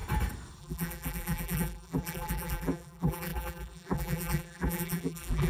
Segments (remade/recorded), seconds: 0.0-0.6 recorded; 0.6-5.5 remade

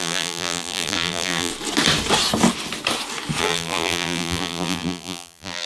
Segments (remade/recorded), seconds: 0.0-1.5 remade; 1.5-3.4 recorded; 3.4-5.7 remade

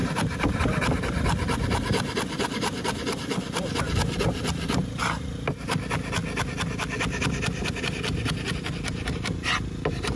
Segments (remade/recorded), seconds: 0.0-6.2 remade; 6.2-7.8 recorded; 7.8-10.2 remade

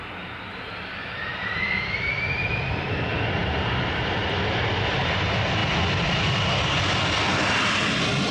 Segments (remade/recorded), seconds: 0.0-1.2 recorded; 1.2-2.6 remade; 2.6-8.3 recorded

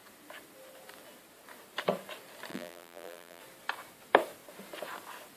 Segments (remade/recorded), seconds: 0.0-2.5 recorded; 2.5-3.4 remade; 3.4-5.4 recorded

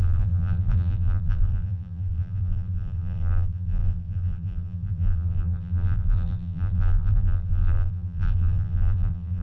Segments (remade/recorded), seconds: 0.0-9.4 remade

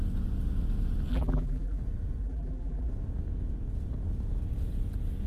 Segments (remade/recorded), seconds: 0.0-1.1 recorded; 1.1-1.8 remade; 1.8-2.2 recorded; 2.2-2.9 remade; 2.9-5.3 recorded